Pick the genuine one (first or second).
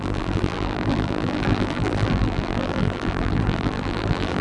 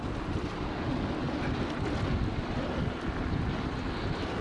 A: second